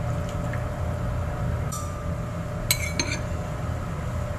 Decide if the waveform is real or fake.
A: real